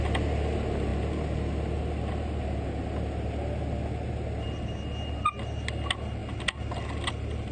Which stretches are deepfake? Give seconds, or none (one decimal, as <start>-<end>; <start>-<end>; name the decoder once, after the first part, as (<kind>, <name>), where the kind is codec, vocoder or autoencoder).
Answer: none